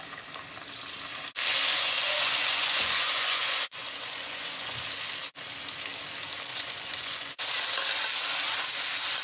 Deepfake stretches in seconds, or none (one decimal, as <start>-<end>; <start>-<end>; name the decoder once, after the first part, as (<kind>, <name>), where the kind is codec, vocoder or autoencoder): 1.7-4.8 (vocoder, Vocos); 6.5-7.4